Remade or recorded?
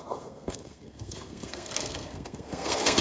remade